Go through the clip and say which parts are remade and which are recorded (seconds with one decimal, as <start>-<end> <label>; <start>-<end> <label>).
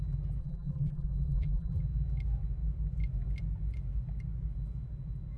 0.0-0.4 recorded; 0.4-1.8 remade; 1.8-5.4 recorded